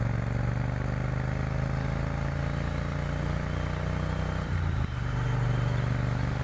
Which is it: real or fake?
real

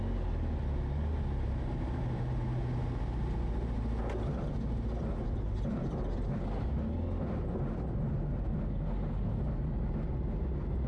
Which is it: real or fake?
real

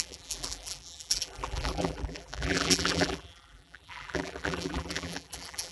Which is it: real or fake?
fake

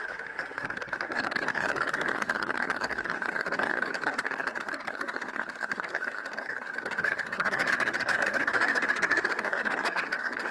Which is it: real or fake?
fake